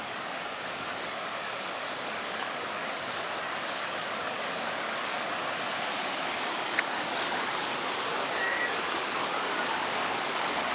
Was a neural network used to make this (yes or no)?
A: yes